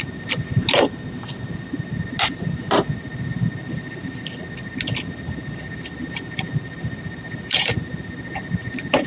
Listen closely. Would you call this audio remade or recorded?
recorded